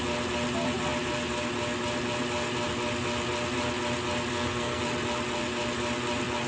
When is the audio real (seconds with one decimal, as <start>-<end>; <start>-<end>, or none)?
0.0-4.3; 4.8-6.5